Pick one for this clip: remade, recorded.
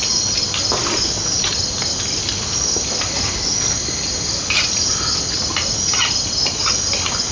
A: recorded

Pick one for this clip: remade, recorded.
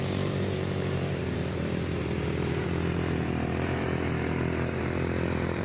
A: remade